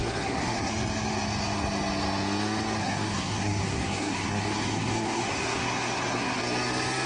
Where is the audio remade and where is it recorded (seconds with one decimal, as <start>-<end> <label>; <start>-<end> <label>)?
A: 0.0-0.7 remade; 0.7-2.8 recorded; 2.8-6.4 remade; 6.4-7.1 recorded